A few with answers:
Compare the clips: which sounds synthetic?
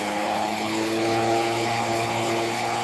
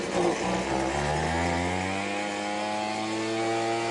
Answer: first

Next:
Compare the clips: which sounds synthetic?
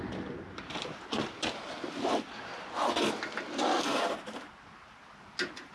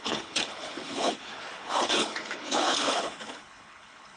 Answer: second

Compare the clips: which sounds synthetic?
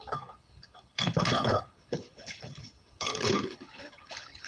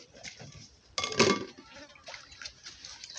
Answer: first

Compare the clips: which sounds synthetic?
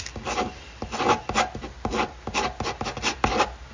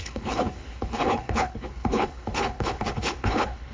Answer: second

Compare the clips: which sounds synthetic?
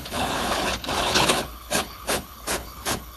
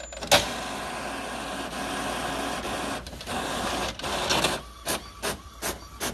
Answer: first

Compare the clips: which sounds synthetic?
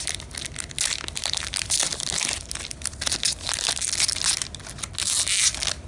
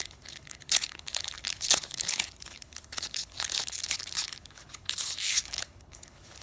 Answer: second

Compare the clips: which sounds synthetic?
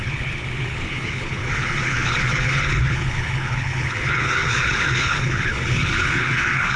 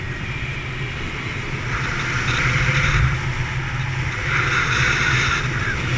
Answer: first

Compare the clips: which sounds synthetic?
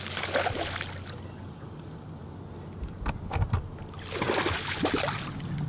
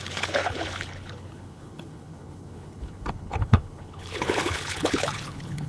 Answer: second